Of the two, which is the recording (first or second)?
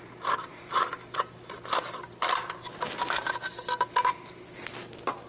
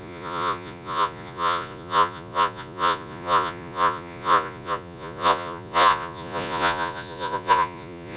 first